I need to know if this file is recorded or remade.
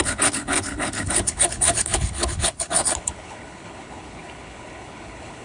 remade